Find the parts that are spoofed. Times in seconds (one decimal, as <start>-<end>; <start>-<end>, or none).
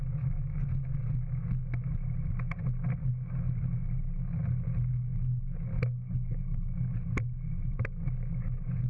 0.6-1.1